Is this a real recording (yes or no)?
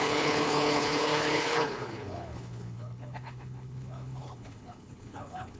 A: no